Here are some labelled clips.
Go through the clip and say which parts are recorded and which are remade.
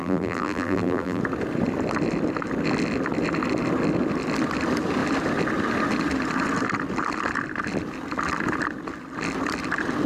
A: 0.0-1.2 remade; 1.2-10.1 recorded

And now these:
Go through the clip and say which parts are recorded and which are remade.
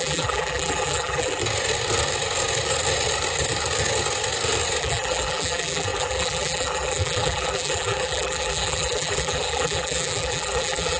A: 0.0-1.4 remade; 1.4-4.8 recorded; 4.8-11.0 remade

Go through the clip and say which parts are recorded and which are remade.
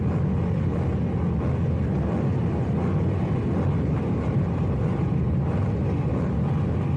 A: 0.0-4.0 recorded; 4.0-6.1 remade; 6.1-7.0 recorded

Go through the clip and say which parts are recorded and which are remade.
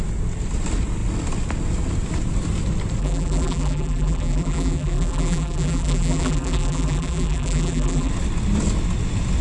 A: 0.0-3.0 recorded; 3.0-8.1 remade; 8.1-9.4 recorded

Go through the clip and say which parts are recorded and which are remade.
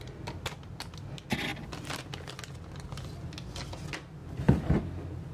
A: 0.0-4.2 recorded; 4.2-4.8 remade; 4.8-5.3 recorded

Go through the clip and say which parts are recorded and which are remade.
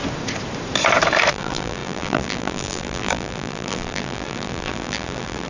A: 0.0-1.3 recorded; 1.3-5.5 remade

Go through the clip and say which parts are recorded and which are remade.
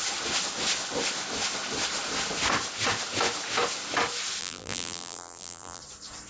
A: 0.0-4.4 recorded; 4.4-5.8 remade; 5.8-6.3 recorded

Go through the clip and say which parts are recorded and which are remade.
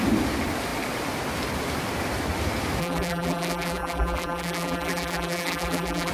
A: 0.0-2.8 recorded; 2.8-6.1 remade